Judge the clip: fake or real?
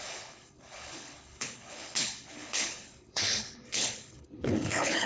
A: fake